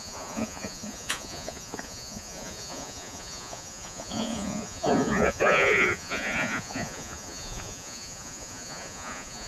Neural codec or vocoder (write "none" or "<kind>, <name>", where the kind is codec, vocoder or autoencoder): vocoder, Vocos